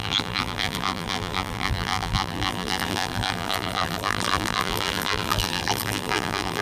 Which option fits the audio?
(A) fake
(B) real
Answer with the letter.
A